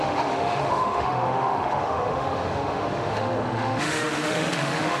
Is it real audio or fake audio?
fake